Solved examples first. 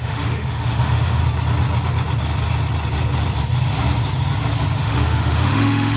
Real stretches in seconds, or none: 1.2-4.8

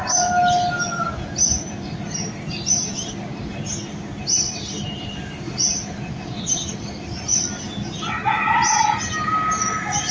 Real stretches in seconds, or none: 0.0-10.1

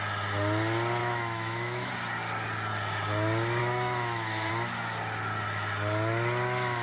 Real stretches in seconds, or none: 0.0-1.0; 1.9-3.6; 4.5-6.8

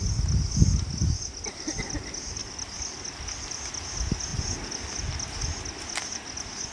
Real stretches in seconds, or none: 0.0-1.0; 1.7-2.4; 3.6-4.3; 5.3-6.7

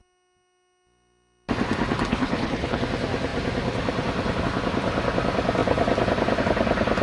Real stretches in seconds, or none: 0.0-2.1; 2.8-7.0

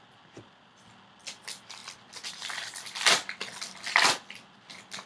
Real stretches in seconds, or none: 0.0-5.1

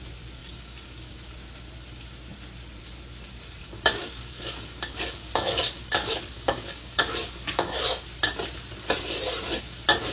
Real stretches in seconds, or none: 0.0-0.4; 1.1-3.6; 7.8-10.1

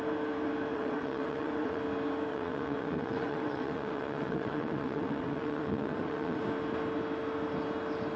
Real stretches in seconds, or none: 0.0-0.7; 1.8-2.3; 6.4-8.2